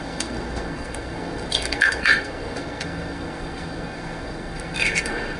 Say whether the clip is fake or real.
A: fake